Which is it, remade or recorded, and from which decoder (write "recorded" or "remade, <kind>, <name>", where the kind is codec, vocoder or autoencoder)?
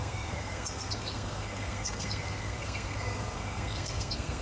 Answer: remade, codec, SNAC